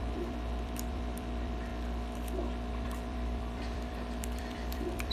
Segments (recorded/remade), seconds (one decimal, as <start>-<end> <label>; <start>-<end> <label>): 0.0-1.7 remade; 1.7-2.7 recorded; 2.7-5.1 remade